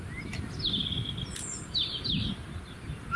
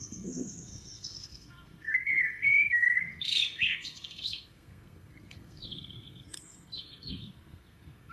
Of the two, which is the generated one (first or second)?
second